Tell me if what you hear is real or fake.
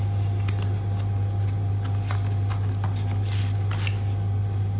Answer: real